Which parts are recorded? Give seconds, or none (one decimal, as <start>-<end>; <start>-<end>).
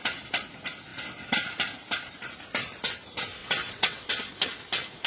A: 0.0-3.4; 4.1-5.1